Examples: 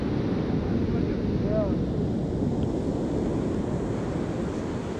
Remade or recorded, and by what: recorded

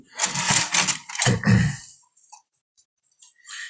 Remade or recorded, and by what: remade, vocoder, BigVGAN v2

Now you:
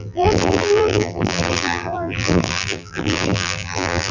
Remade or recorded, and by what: remade, vocoder, BigVGAN v2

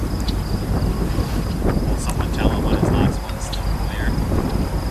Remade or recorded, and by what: recorded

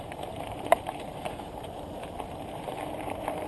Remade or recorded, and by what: remade, vocoder, BigVGAN v2